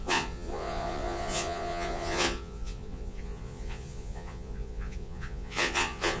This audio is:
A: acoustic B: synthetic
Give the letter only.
B